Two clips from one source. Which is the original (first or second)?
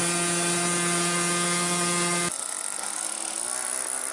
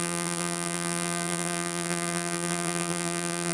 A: first